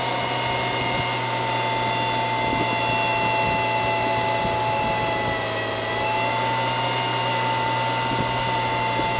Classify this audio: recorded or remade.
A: recorded